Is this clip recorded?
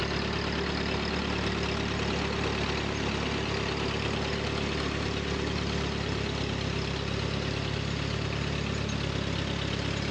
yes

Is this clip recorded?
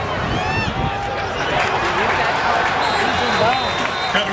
yes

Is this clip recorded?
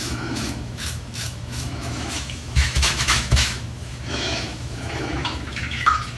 no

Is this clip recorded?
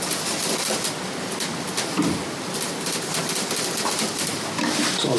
yes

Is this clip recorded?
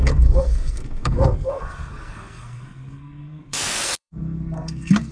no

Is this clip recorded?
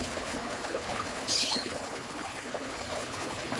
no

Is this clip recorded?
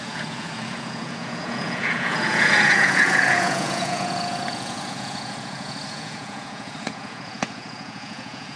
no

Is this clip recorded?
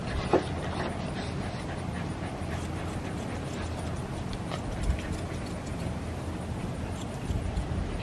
yes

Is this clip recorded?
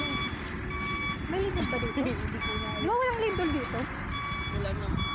yes